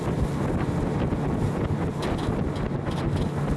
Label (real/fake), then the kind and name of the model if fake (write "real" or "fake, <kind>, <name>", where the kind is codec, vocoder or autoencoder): real